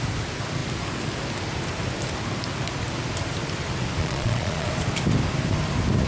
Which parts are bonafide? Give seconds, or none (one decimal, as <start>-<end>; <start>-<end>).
0.0-4.0; 4.7-6.1